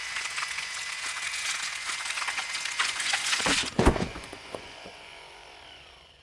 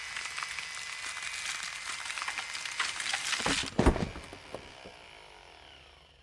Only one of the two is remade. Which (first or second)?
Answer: first